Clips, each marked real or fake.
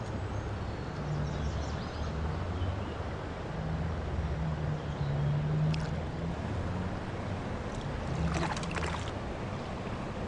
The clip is real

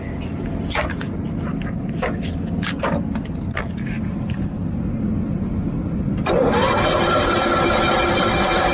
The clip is real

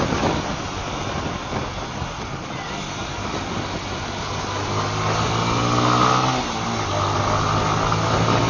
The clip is real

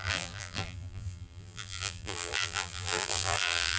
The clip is fake